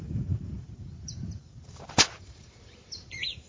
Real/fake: fake